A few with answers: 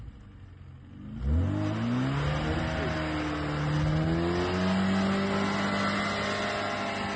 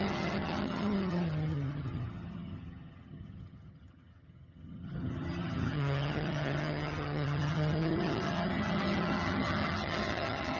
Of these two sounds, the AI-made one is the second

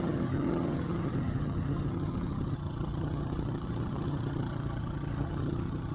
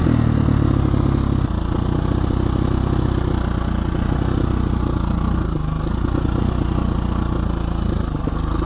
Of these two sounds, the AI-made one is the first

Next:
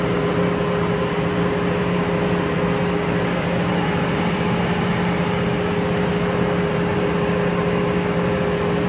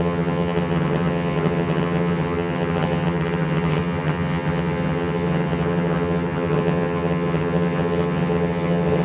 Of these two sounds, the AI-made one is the second